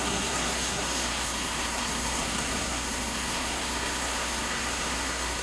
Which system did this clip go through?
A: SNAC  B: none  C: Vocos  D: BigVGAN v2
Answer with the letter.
A